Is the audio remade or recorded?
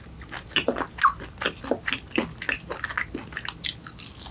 recorded